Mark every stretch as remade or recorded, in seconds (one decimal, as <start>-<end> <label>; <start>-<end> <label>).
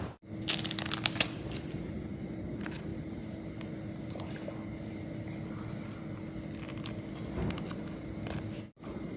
0.0-9.2 recorded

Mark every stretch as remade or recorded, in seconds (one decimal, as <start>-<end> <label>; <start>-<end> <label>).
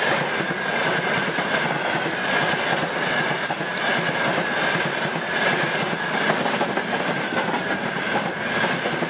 0.0-9.1 recorded